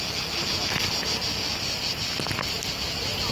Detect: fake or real real